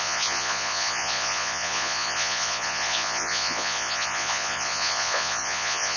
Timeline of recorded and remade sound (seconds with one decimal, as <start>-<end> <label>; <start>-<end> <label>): 0.0-6.0 remade

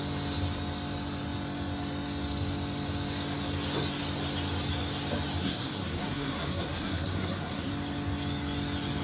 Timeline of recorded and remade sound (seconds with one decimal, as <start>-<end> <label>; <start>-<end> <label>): 0.0-5.4 recorded; 5.4-7.7 remade; 7.7-9.0 recorded

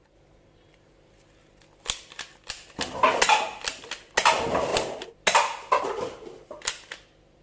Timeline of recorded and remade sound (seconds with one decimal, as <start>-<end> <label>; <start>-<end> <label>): 0.0-7.4 recorded

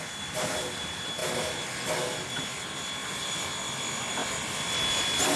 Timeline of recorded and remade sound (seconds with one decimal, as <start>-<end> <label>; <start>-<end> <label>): 0.0-3.0 recorded; 3.0-3.5 remade; 3.5-5.4 recorded